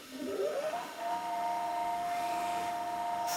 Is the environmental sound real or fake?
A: fake